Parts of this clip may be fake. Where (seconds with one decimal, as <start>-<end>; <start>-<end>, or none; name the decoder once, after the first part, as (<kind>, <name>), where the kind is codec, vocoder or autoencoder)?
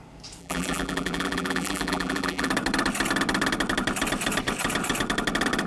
0.4-2.5 (vocoder, BigVGAN v2)